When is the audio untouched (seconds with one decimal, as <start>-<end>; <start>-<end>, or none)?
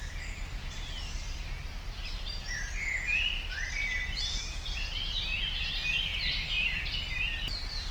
0.0-6.1; 6.9-7.9